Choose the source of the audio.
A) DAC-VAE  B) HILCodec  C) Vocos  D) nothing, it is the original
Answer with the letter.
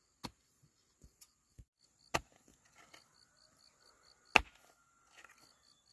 D